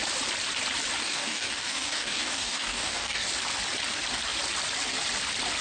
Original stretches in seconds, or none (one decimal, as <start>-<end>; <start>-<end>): 0.0-1.0; 3.3-5.6